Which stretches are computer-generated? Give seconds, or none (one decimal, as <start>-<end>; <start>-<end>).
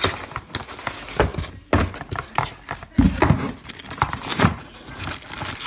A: 4.3-4.9